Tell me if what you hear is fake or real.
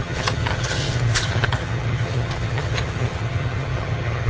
fake